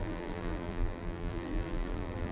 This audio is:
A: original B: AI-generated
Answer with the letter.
B